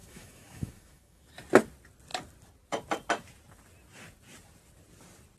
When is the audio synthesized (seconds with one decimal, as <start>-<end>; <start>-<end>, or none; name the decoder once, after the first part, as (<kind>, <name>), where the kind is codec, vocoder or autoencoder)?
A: 0.0-1.2 (autoencoder, DAC-VAE)